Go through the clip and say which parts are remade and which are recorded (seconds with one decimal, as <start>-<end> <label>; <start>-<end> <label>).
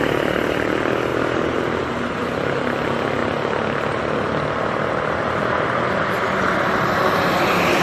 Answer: 0.0-1.1 recorded; 1.1-1.8 remade; 1.8-7.8 recorded